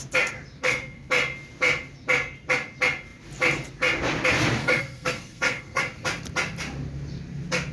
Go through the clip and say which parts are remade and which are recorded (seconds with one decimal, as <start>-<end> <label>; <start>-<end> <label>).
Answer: 0.0-0.6 recorded; 0.6-1.1 remade; 1.1-4.6 recorded; 4.6-5.8 remade; 5.8-7.7 recorded